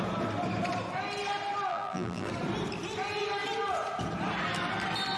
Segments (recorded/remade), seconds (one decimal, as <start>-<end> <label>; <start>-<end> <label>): 0.0-1.7 recorded; 1.7-2.3 remade; 2.3-5.2 recorded